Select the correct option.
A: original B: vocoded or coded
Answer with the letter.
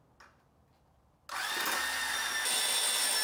A